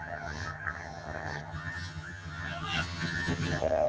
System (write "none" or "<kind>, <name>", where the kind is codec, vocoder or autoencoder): vocoder, HiFi-GAN